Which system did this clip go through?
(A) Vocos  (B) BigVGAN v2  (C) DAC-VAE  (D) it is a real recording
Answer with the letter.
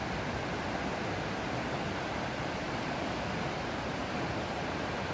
D